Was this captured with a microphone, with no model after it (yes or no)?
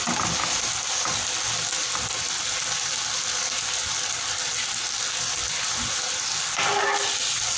yes